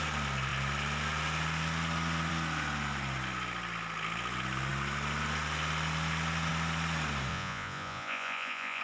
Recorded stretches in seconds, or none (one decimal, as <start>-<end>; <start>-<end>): 0.0-7.3